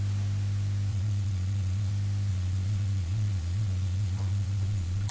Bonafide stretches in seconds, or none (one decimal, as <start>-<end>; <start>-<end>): 0.0-0.9; 1.9-2.3